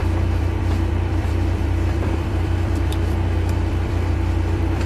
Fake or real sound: fake